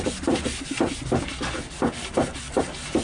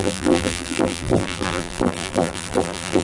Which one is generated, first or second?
second